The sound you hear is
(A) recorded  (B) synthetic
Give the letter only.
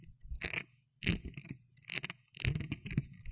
A